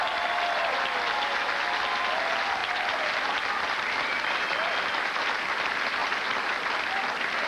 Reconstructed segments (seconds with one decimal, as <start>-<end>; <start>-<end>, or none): none